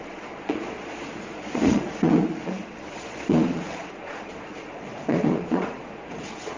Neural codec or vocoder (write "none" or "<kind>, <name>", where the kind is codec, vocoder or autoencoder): vocoder, Vocos